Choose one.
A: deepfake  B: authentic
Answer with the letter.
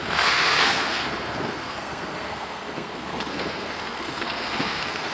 A